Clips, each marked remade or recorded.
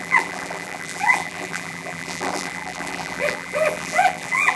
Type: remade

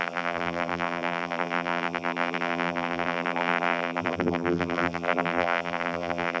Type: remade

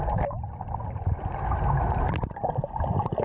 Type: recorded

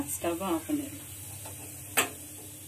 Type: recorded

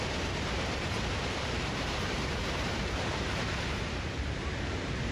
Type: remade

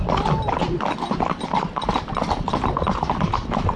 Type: recorded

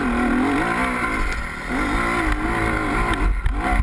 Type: recorded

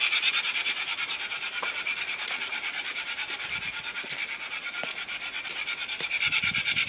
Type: remade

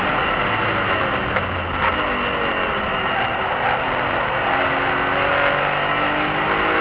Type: recorded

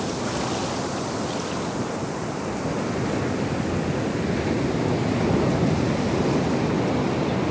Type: recorded